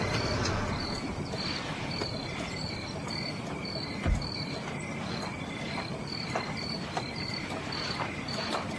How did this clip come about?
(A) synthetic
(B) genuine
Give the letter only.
B